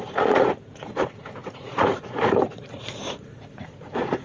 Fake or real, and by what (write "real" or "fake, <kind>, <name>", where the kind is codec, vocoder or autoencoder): fake, vocoder, Vocos